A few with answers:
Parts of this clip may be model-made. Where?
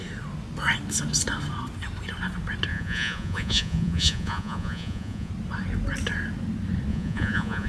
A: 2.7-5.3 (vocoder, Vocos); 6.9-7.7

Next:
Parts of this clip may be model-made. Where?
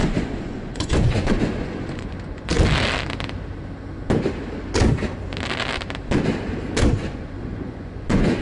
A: 0.0-2.5 (vocoder, Vocos); 6.9-8.4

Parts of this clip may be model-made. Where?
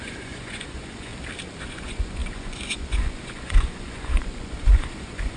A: 0.0-1.1 (vocoder, Vocos); 1.6-5.4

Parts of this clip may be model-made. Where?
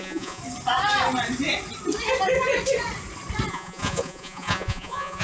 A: 0.0-0.4 (vocoder, Vocos); 3.5-5.2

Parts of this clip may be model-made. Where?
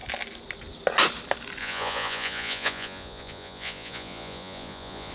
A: 1.6-5.1 (vocoder, Vocos)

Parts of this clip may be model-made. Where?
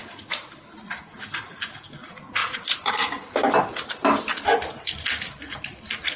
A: 0.0-0.5 (vocoder, Vocos); 2.4-2.9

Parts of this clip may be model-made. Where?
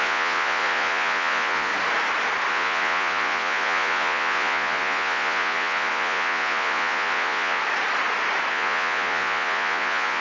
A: 0.0-1.7 (vocoder, Vocos); 2.5-7.6; 8.5-10.2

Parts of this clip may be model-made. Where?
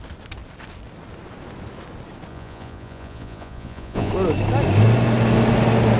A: 2.3-4.1 (vocoder, Vocos)